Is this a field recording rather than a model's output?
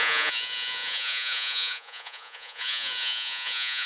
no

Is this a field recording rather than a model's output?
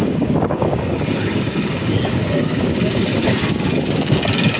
no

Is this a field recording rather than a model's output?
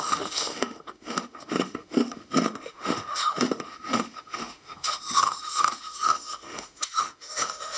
no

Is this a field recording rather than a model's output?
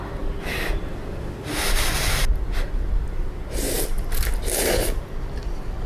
yes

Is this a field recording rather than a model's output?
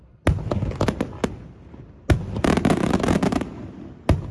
yes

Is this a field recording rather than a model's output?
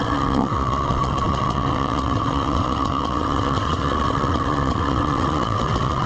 no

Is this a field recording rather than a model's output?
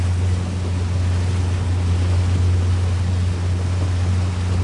yes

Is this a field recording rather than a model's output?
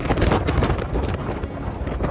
yes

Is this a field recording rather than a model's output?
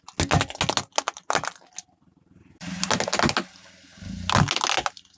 yes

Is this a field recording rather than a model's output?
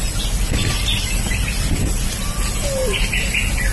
yes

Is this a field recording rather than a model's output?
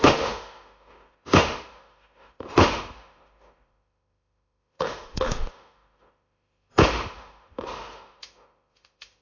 no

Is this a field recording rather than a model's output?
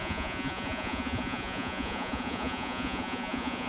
no